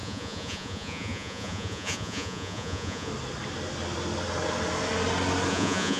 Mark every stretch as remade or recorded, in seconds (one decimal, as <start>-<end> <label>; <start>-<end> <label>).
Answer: 0.0-3.1 remade; 3.1-5.5 recorded; 5.5-6.0 remade